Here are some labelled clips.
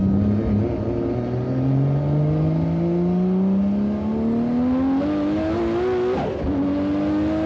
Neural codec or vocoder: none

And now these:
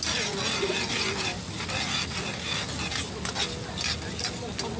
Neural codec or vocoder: none